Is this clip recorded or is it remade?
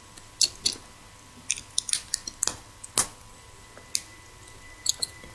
recorded